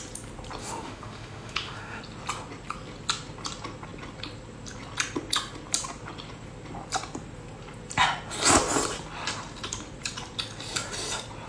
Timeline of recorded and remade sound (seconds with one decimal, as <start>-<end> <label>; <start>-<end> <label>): 0.0-0.6 recorded; 0.6-2.0 remade; 2.0-11.5 recorded

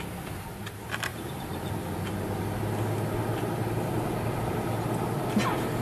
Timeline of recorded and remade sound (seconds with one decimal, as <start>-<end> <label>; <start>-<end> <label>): 0.0-5.8 recorded

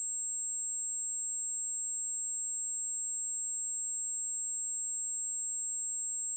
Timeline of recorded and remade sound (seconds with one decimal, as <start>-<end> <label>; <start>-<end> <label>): 0.0-6.4 recorded

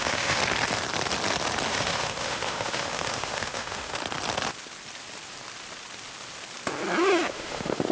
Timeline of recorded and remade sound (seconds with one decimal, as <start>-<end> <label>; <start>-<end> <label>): 0.0-0.4 remade; 0.4-1.7 recorded; 1.7-4.0 remade; 4.0-7.3 recorded; 7.3-7.9 remade